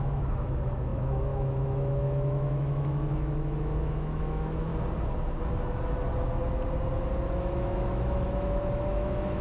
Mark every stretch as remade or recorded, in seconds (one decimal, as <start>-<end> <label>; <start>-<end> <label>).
0.0-4.7 remade; 4.7-7.4 recorded; 7.4-9.4 remade